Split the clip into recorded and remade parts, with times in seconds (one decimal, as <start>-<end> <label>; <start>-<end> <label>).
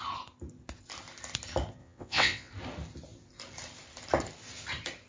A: 0.0-1.8 recorded; 1.8-2.5 remade; 2.5-5.1 recorded